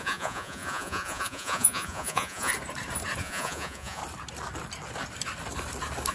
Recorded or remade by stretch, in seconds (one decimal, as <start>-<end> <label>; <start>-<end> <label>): 0.0-2.5 remade; 2.5-3.2 recorded; 3.2-4.0 remade; 4.0-6.1 recorded